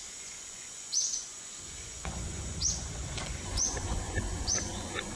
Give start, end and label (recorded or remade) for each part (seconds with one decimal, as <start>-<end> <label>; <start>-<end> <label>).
0.0-5.2 remade